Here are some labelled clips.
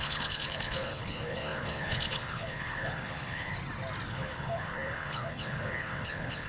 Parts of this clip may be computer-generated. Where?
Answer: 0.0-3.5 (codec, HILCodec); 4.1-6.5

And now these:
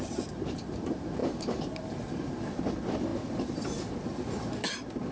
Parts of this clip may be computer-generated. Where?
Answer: none

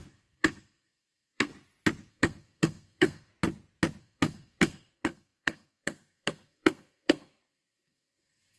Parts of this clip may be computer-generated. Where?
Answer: 0.0-1.5 (codec, SNAC); 2.1-3.3; 4.0-8.6

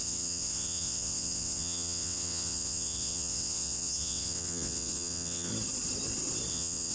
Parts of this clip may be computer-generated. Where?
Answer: 0.0-5.5 (vocoder, WaveNeXt); 6.5-6.9

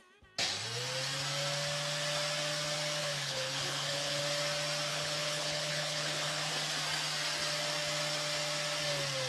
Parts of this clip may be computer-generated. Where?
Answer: 3.0-4.2 (codec, HILCodec); 4.9-6.5

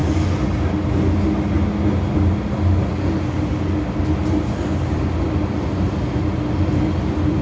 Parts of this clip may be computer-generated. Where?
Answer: none

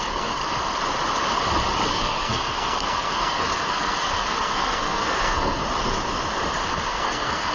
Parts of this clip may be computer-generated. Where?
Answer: 0.0-0.4 (codec, SNAC); 1.9-5.6; 6.9-7.5